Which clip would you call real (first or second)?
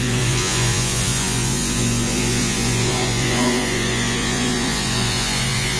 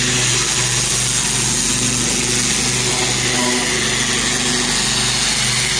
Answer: second